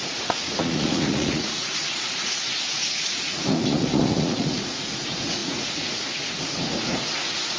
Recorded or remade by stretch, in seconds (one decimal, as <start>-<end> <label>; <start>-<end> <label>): 0.0-7.6 remade